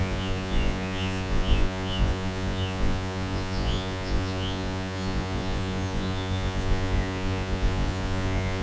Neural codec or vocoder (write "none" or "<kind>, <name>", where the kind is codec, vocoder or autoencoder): vocoder, Vocos